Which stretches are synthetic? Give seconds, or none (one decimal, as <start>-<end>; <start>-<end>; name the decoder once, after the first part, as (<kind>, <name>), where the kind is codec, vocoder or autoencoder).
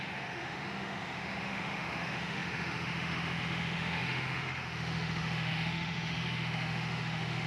0.0-7.5 (autoencoder, DAC-VAE)